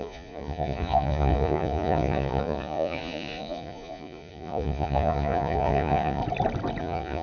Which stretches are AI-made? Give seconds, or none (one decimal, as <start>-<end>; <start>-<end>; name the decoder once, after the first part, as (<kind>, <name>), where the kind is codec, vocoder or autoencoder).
0.0-6.2 (vocoder, Vocos); 6.8-7.2